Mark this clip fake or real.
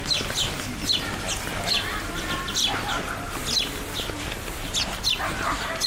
real